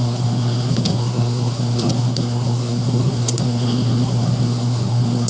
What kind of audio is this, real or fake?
fake